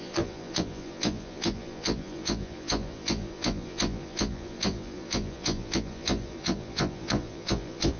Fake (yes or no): yes